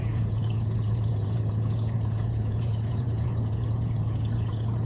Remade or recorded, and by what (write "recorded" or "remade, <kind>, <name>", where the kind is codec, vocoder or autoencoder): remade, vocoder, Vocos